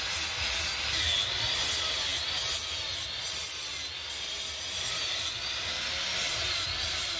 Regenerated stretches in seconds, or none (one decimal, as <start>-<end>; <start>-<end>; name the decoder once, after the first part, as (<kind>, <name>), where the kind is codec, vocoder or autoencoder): none